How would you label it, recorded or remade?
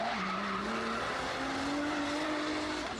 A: recorded